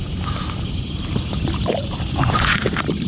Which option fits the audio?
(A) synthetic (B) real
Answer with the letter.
B